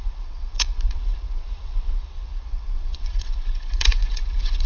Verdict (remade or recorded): remade